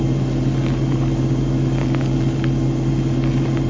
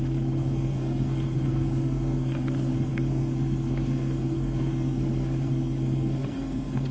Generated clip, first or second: second